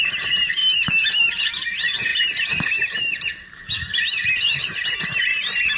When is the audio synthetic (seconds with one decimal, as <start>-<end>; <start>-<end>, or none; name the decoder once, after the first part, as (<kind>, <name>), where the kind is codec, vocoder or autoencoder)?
0.0-0.6 (vocoder, BigVGAN v2); 1.2-5.8